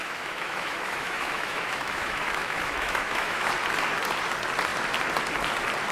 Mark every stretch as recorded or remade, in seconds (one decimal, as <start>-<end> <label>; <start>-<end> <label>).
0.0-3.5 remade; 3.5-5.9 recorded